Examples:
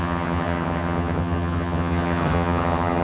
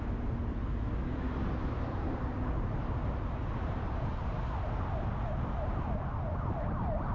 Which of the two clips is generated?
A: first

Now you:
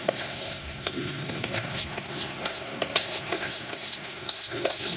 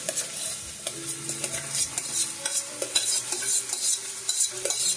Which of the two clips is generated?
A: first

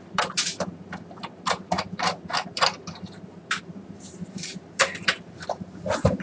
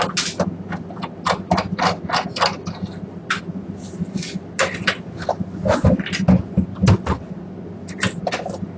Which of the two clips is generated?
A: first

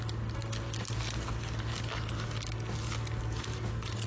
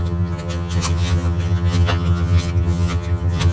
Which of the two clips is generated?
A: second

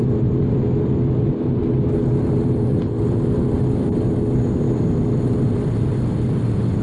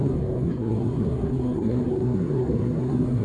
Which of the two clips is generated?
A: second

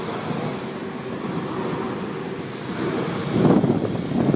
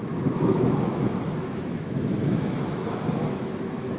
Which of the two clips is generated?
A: second